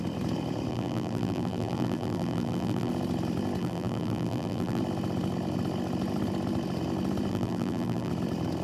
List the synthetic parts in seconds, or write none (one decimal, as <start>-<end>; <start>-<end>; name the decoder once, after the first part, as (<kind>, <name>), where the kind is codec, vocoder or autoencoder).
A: 0.7-2.9 (vocoder, BigVGAN v2); 3.6-4.8; 7.3-8.1